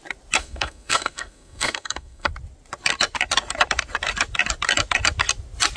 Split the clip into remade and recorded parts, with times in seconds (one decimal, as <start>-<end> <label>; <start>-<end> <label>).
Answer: 0.0-0.4 recorded; 0.4-2.3 remade; 2.3-5.8 recorded